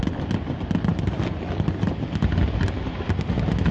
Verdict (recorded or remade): recorded